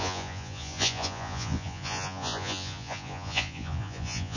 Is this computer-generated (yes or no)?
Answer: yes